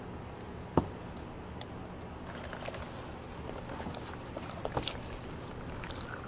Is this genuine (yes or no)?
yes